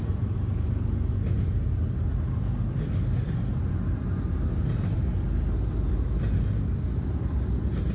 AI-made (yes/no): no